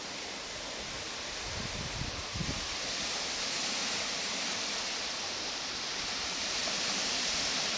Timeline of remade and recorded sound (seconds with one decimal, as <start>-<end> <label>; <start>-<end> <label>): 0.0-3.8 recorded; 3.8-7.3 remade; 7.3-7.8 recorded